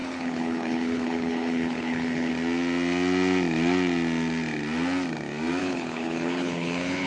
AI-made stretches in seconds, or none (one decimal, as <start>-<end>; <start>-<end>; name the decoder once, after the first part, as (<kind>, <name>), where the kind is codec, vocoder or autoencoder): 0.0-2.3 (codec, HILCodec); 5.6-7.1